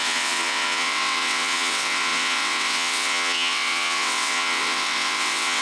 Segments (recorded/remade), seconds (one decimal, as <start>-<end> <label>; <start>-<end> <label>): 0.0-5.6 remade